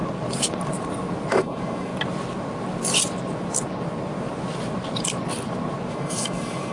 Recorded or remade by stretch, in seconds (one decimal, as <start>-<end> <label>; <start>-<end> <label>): 0.0-1.3 recorded; 1.3-1.9 remade; 1.9-5.9 recorded; 5.9-6.7 remade